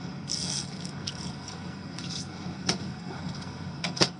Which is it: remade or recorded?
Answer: remade